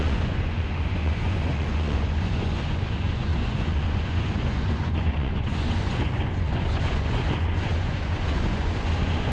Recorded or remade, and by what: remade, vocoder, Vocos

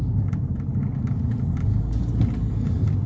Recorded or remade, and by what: recorded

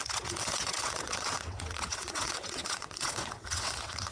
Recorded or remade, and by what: remade, vocoder, WaveNeXt